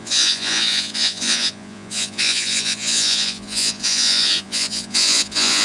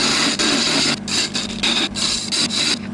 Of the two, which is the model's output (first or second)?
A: first